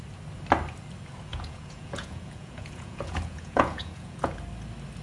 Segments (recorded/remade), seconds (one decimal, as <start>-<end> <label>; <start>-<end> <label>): 0.0-1.3 recorded; 1.3-4.3 remade; 4.3-5.0 recorded